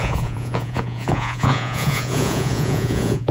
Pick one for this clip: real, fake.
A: fake